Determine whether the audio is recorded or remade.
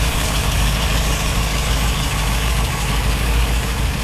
remade